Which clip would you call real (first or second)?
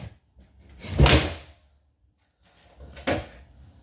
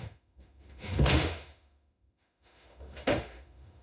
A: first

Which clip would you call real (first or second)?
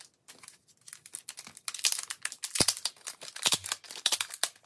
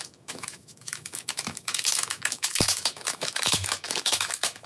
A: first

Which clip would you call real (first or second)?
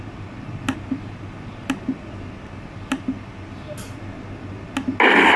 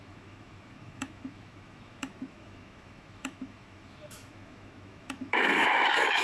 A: first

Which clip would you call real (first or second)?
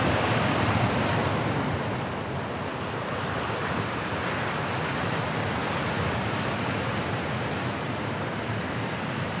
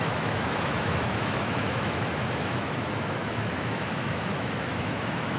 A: first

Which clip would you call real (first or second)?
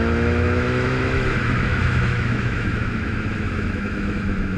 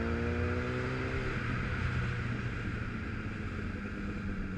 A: second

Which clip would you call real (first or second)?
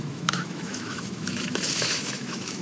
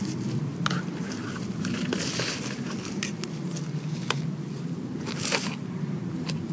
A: second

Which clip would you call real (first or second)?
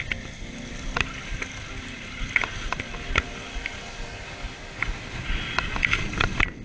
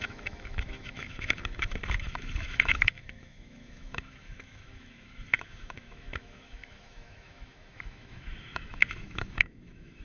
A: first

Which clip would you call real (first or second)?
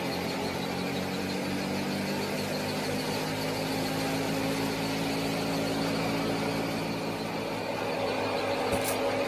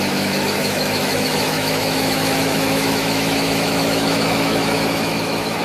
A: first